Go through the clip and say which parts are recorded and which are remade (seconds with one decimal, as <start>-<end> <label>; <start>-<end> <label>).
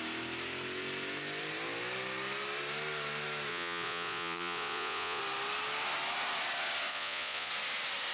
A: 0.0-3.5 recorded; 3.5-5.2 remade; 5.2-6.9 recorded; 6.9-7.5 remade; 7.5-8.1 recorded